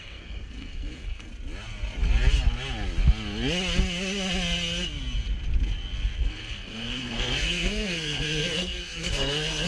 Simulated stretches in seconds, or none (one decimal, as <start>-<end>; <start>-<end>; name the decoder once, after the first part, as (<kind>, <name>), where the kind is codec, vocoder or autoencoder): 0.0-1.3 (codec, SNAC); 6.2-9.7